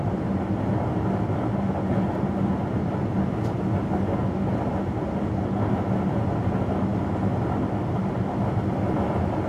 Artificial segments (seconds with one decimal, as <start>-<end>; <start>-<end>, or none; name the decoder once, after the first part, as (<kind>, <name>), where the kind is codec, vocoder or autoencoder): none